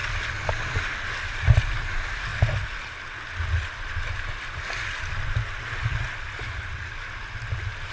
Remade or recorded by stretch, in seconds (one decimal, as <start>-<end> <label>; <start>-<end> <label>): 0.0-7.9 recorded